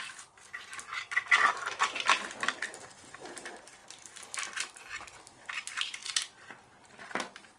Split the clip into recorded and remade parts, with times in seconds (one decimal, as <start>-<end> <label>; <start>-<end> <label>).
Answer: 0.0-7.6 recorded